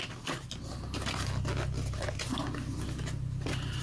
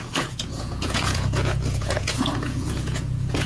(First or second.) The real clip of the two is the first